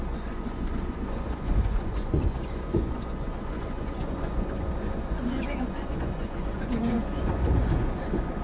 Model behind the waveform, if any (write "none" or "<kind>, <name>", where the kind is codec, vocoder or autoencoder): vocoder, Vocos